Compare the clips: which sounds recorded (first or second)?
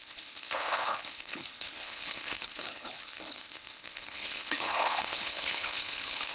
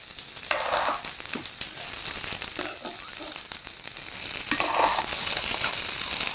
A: second